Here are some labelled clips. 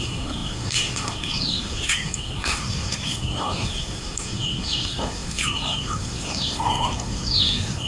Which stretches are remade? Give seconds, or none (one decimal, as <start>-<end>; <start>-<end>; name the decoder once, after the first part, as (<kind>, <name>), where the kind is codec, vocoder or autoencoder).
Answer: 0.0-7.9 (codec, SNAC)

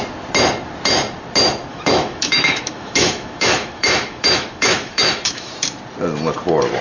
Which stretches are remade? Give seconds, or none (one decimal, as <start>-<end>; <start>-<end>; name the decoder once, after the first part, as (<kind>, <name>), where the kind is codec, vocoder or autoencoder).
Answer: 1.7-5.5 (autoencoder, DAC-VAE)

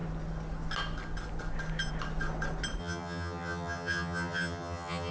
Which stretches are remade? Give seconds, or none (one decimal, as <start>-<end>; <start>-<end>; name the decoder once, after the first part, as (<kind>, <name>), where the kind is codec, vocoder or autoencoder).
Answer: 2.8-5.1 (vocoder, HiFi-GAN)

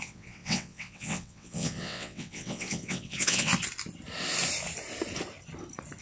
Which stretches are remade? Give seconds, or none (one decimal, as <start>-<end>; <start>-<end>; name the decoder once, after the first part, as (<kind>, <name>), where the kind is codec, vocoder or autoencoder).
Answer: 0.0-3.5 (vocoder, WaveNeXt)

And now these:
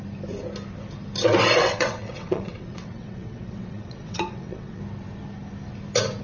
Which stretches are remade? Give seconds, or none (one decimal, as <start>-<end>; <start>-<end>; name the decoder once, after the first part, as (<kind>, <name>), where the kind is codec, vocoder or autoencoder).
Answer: 1.6-4.8 (vocoder, WaveNeXt)

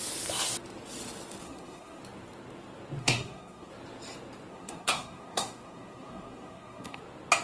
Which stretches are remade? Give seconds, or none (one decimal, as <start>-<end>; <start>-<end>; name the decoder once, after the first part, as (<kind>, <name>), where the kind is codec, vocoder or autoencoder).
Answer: 1.4-2.0 (codec, SNAC); 3.0-3.7; 4.5-7.0

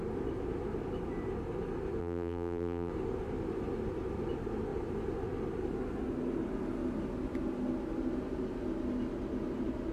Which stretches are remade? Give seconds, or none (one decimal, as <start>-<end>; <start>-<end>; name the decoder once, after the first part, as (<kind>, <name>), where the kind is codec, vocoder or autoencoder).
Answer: 2.0-2.9 (vocoder, BigVGAN v2)

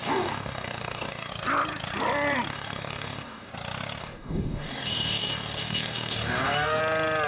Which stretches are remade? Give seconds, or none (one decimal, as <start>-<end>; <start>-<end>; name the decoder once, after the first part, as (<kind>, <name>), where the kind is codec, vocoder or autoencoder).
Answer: 0.0-1.3 (codec, DAC); 2.5-3.5; 4.0-6.8